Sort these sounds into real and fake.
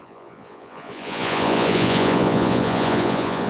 fake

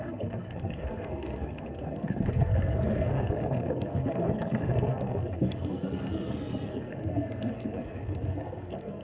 fake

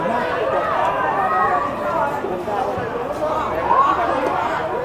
real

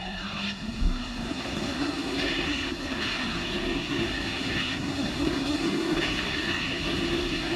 fake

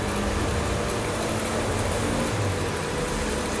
real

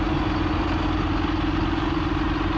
real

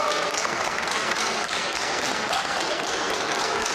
fake